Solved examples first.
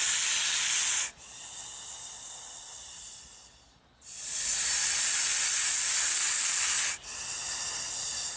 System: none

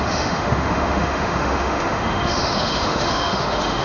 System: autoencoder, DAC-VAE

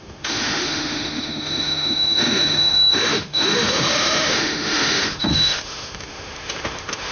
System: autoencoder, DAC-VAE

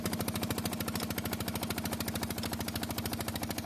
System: none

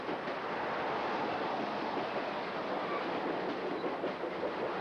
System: none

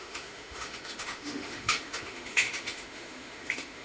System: autoencoder, DAC-VAE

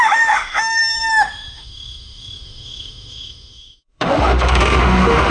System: autoencoder, DAC-VAE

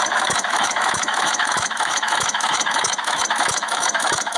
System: autoencoder, DAC-VAE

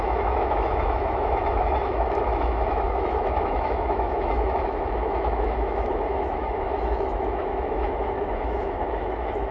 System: autoencoder, DAC-VAE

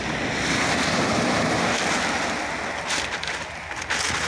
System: none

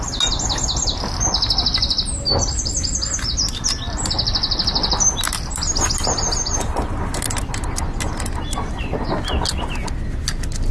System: none